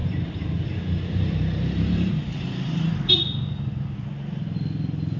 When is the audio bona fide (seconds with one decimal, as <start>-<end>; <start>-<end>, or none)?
3.1-5.2